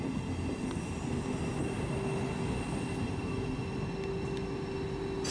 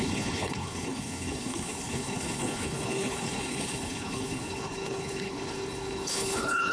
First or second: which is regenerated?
second